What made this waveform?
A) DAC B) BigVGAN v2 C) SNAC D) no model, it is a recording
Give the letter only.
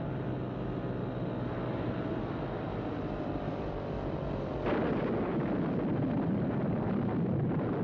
D